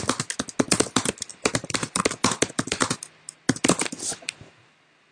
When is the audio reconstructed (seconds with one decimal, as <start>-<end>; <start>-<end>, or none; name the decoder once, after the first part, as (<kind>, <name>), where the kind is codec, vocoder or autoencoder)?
1.3-2.0 (vocoder, BigVGAN v2)